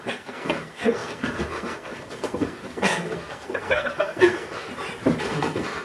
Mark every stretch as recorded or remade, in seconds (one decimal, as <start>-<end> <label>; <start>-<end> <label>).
0.0-4.7 remade; 4.7-5.2 recorded; 5.2-5.8 remade